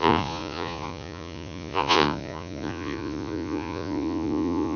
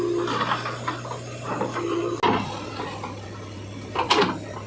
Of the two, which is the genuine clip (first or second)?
second